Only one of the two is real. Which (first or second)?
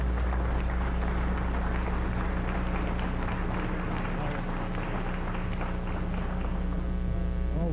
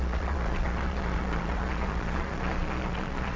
first